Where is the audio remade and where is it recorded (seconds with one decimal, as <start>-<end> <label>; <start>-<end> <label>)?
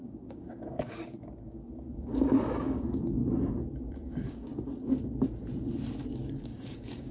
0.0-3.2 remade; 3.2-3.9 recorded; 3.9-4.5 remade; 4.5-6.1 recorded; 6.1-7.1 remade